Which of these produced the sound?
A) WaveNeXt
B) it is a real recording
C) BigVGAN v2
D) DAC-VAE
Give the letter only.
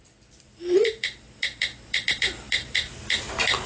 C